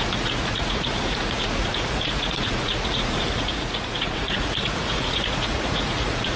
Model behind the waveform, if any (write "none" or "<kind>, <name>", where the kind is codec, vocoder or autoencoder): vocoder, Vocos